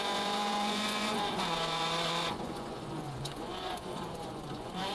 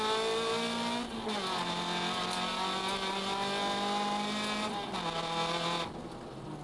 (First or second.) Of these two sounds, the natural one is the second